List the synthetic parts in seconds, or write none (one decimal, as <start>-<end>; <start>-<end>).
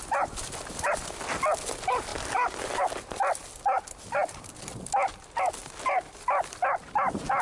none